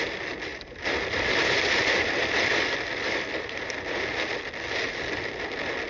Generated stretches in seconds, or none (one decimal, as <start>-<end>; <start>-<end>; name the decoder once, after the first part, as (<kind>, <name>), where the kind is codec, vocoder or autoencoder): 0.5-3.8 (vocoder, BigVGAN v2)